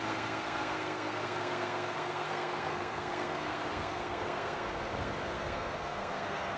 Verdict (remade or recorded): remade